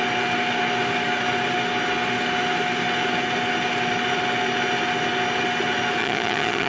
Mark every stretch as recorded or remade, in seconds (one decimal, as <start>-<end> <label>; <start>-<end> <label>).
0.0-6.0 recorded; 6.0-6.7 remade